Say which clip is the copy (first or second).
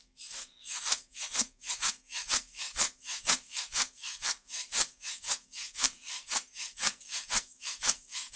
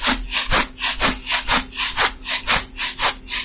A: first